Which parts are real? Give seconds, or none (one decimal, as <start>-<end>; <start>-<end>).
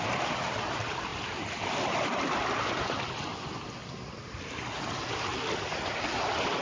0.0-6.6